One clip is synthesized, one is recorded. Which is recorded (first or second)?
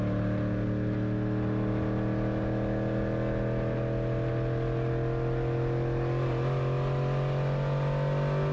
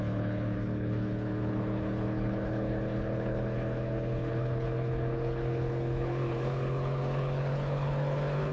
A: first